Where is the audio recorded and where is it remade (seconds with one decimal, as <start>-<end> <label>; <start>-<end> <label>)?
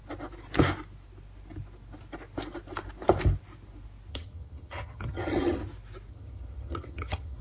0.0-4.1 recorded; 4.1-5.6 remade; 5.6-6.1 recorded; 6.1-7.4 remade